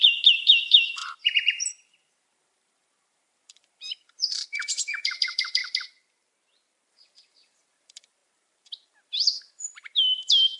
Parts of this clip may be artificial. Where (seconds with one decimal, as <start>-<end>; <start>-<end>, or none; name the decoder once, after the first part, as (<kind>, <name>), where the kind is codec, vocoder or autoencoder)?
0.0-5.6 (vocoder, BigVGAN v2); 6.9-10.6